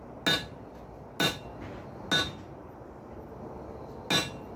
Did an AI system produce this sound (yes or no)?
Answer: no